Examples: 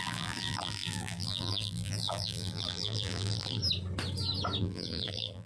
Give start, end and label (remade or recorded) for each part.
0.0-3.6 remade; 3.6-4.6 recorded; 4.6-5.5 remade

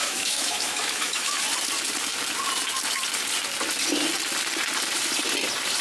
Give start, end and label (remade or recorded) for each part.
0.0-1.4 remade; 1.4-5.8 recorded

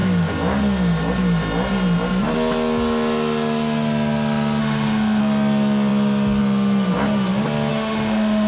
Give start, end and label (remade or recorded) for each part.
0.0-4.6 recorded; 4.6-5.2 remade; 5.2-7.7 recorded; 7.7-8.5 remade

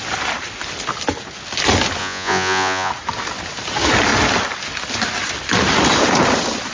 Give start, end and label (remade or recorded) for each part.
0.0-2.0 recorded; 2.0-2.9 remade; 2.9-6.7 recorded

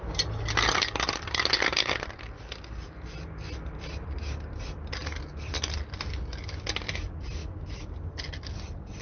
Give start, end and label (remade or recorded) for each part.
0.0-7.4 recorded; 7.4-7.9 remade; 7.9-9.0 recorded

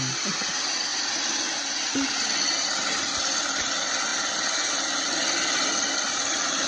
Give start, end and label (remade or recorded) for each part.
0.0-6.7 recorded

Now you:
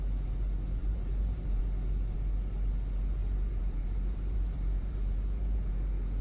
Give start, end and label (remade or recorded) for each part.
0.0-0.8 recorded; 0.8-1.6 remade; 1.6-3.2 recorded; 3.2-5.7 remade; 5.7-6.2 recorded